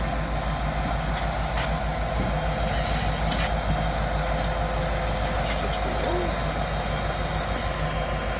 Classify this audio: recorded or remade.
recorded